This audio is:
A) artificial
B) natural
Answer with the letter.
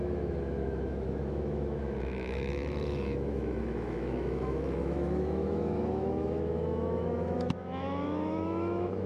A